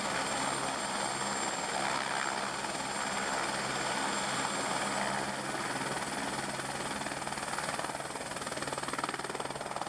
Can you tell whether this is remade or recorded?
recorded